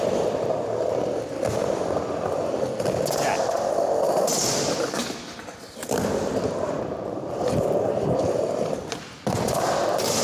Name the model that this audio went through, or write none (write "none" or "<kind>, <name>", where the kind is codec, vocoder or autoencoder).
none